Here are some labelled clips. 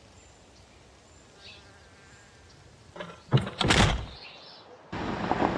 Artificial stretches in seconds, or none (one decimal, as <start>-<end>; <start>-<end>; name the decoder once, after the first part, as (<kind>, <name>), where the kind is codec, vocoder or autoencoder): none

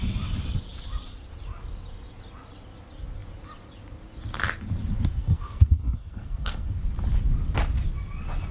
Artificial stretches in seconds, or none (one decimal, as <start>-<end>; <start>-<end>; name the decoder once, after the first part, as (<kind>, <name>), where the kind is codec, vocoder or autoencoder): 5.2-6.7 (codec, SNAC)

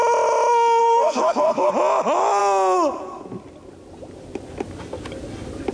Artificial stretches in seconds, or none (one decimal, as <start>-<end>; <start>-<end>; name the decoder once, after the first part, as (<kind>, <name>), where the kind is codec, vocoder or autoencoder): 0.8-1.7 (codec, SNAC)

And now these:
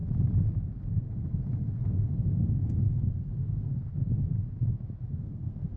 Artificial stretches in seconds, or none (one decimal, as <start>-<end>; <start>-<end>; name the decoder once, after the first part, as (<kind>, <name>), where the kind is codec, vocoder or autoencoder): 0.8-3.9 (codec, SNAC); 5.2-5.8

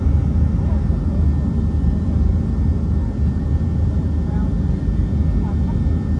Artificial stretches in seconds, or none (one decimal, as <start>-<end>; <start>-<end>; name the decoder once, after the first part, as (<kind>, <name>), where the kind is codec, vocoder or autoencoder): none